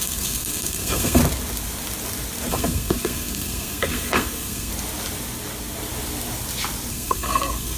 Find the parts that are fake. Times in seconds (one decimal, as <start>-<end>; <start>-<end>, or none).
0.0-1.2; 2.5-4.7; 6.9-7.8

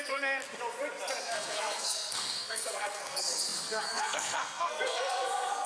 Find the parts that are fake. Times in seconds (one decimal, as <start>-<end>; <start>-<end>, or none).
0.0-0.4; 1.2-5.7

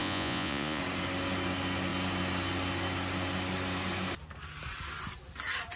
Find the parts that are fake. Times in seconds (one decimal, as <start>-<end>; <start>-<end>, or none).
0.0-0.8

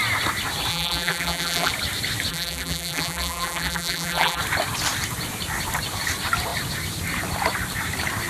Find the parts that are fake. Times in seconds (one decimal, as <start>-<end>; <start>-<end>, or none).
0.7-1.7; 2.3-4.4

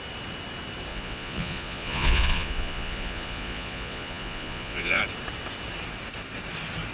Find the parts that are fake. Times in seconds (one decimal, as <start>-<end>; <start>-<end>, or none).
0.9-5.0

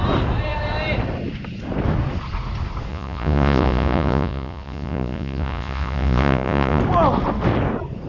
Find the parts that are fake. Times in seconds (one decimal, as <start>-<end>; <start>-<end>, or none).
2.9-6.8